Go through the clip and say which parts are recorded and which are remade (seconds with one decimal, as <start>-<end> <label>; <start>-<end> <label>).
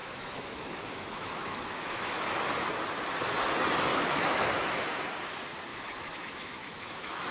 0.0-2.5 remade; 2.5-3.9 recorded; 3.9-4.7 remade; 4.7-5.7 recorded; 5.7-7.3 remade